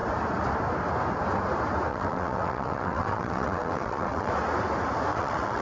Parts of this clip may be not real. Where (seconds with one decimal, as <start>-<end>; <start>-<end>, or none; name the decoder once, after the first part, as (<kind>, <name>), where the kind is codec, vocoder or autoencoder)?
1.9-4.3 (vocoder, WaveNeXt); 5.1-5.6